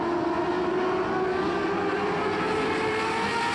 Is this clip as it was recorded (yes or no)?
yes